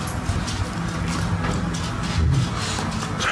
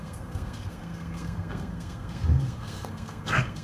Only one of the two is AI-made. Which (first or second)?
second